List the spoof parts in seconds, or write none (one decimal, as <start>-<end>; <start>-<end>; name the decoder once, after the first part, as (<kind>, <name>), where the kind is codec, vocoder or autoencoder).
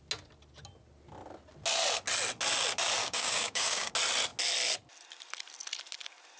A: 3.0-3.9 (codec, DAC)